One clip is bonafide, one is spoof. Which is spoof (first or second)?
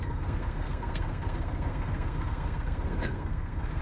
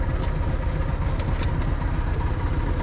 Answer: first